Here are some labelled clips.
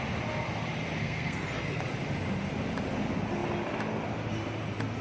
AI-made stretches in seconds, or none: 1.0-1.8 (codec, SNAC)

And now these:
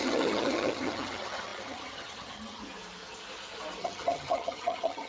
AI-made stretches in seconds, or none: 0.0-2.6 (vocoder, HiFi-GAN); 3.8-5.1

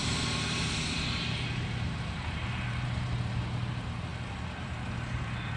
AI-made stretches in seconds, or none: 0.0-5.6 (vocoder, BigVGAN v2)

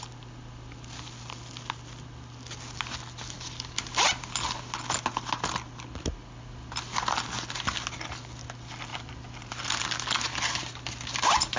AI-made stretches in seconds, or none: 8.9-9.5 (vocoder, BigVGAN v2)

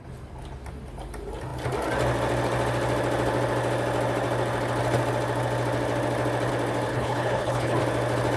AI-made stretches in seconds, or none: 6.9-7.8 (codec, HILCodec)

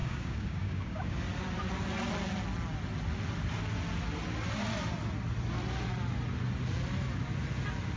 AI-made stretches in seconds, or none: 0.0-1.2 (codec, DAC)

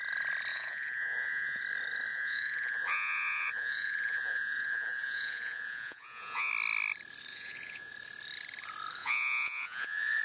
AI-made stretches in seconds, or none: 0.5-1.6 (vocoder, Vocos); 2.1-6.5; 7.3-7.9; 9.0-10.2

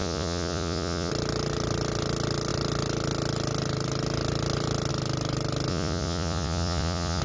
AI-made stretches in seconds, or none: 0.0-1.1 (vocoder, Vocos); 5.7-7.2